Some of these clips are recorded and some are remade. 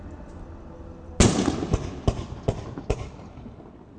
recorded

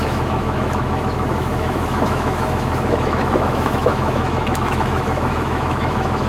remade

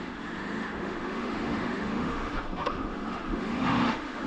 remade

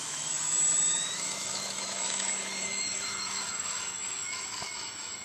remade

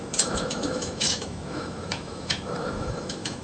remade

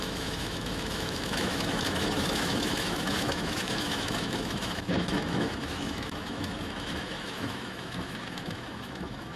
remade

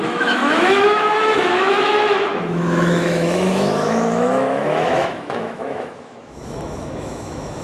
remade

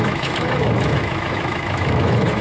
remade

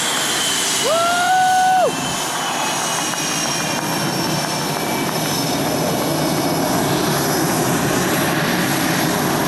recorded